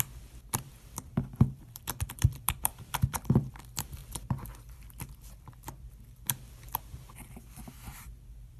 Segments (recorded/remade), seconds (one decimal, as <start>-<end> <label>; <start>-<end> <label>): 0.0-8.6 remade